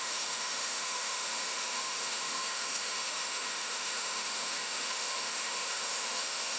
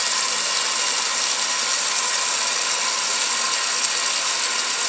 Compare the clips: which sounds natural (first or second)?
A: second